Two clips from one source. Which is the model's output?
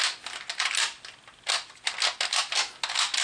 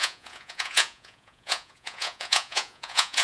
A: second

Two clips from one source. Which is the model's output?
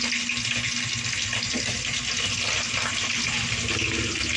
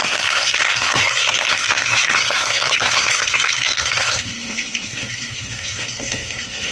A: second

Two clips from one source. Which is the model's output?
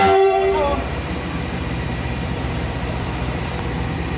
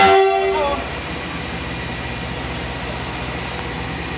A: first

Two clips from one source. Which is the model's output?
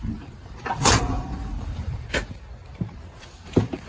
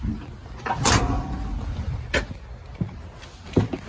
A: first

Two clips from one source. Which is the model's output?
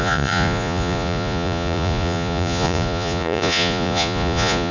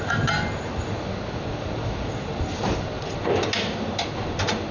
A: first